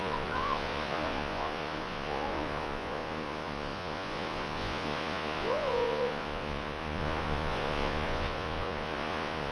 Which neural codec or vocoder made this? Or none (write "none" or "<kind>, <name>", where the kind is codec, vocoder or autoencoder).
vocoder, Vocos